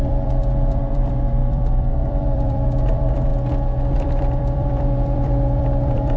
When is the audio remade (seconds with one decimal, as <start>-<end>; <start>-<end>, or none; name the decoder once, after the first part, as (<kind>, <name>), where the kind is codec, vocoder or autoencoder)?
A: 0.0-3.3 (vocoder, BigVGAN v2); 3.9-6.2